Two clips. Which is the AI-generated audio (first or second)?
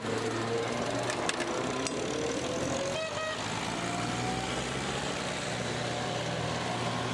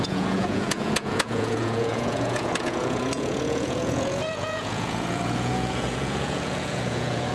second